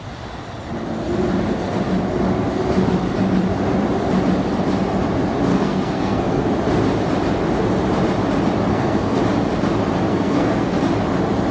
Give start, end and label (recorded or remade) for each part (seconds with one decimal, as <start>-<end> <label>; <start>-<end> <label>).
0.0-5.5 recorded; 5.5-6.5 remade; 6.5-8.7 recorded; 8.7-9.2 remade; 9.2-10.1 recorded; 10.1-10.8 remade; 10.8-11.5 recorded